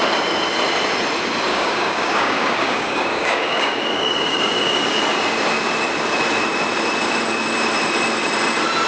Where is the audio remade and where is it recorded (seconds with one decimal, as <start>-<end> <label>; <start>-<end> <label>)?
0.0-1.5 recorded; 1.5-5.0 remade; 5.0-8.9 recorded